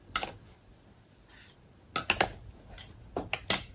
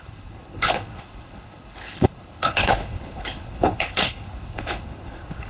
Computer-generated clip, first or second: second